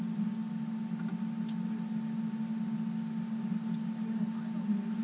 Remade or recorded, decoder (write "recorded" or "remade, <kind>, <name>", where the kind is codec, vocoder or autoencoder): recorded